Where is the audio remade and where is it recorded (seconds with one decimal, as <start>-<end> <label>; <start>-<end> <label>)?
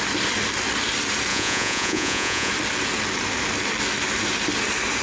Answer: 0.0-1.3 recorded; 1.3-2.5 remade; 2.5-5.0 recorded